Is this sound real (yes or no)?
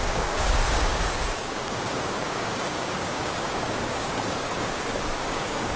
no